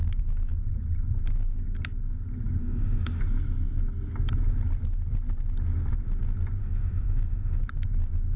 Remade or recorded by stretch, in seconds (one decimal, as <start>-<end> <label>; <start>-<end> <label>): 0.0-2.6 recorded; 2.6-3.2 remade; 3.2-6.6 recorded; 6.6-7.6 remade; 7.6-8.4 recorded